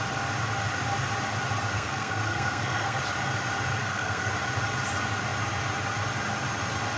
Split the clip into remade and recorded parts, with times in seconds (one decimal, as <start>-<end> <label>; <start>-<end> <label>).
0.0-1.7 recorded; 1.7-3.0 remade; 3.0-3.7 recorded; 3.7-4.3 remade; 4.3-7.0 recorded